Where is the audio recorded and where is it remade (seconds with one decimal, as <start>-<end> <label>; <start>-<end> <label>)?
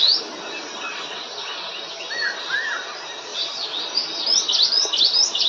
0.0-5.5 recorded